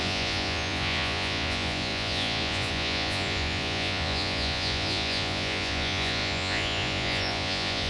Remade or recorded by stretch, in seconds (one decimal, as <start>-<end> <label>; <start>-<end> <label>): 0.0-7.9 remade